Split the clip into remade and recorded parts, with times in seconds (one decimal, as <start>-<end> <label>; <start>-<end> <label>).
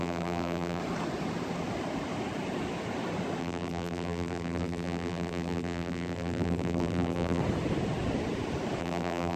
0.0-0.8 remade; 0.8-3.4 recorded; 3.4-7.4 remade; 7.4-8.8 recorded; 8.8-9.4 remade